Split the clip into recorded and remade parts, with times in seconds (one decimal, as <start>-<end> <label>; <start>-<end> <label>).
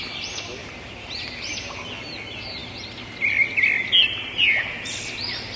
0.0-0.6 recorded; 0.6-1.7 remade; 1.7-5.6 recorded